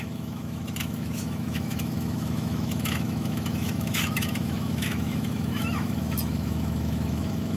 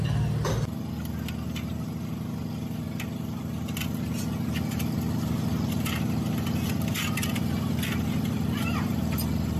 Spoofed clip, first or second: first